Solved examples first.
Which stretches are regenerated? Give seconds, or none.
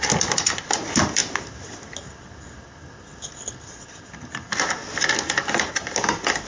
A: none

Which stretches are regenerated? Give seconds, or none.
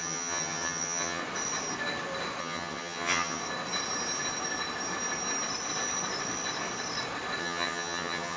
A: 0.0-1.2 (vocoder, HiFi-GAN); 2.4-3.4; 7.4-8.4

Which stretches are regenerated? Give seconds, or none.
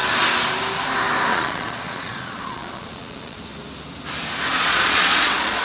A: 1.3-3.4 (vocoder, Vocos); 4.5-5.6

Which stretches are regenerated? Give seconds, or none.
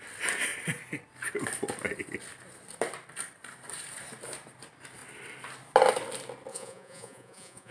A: 6.5-7.7 (vocoder, Vocos)